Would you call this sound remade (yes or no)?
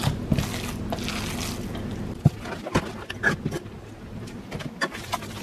no